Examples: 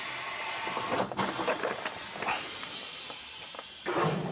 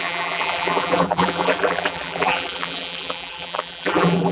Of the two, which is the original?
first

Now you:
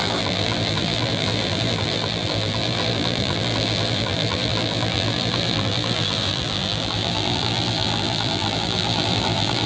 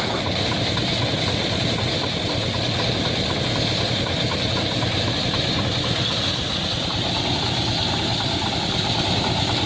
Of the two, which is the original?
second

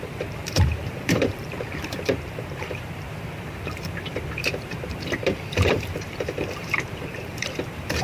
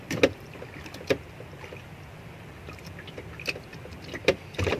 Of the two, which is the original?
second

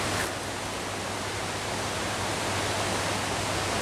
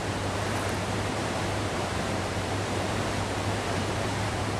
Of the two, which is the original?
first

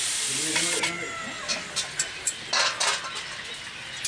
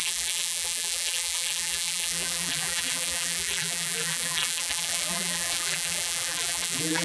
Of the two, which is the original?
first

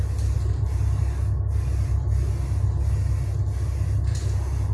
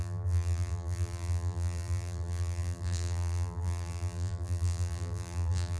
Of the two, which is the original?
first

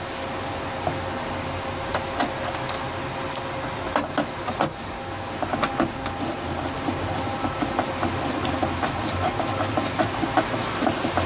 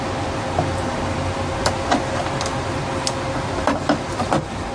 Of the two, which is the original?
first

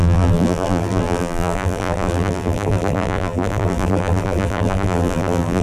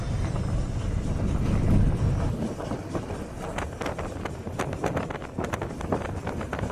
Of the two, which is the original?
second